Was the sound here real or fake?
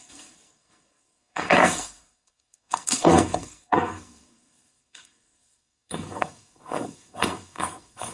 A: fake